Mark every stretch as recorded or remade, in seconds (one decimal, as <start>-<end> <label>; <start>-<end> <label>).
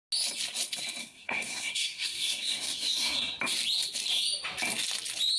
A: 0.0-1.0 recorded; 1.0-3.4 remade; 3.4-5.4 recorded